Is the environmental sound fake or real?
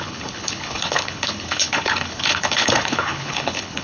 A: fake